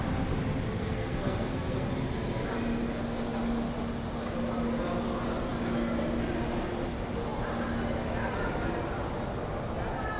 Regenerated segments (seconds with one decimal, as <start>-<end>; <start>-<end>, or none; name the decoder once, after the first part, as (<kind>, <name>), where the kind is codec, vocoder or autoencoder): 0.8-1.9 (codec, SNAC)